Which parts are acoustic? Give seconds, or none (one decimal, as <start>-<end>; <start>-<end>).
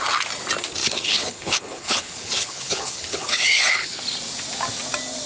0.0-0.8; 4.0-5.3